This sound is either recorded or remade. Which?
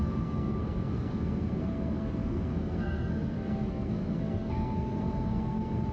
remade